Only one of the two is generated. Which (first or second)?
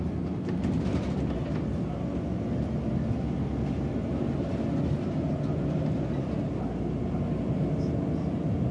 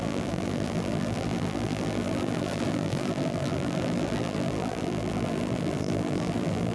second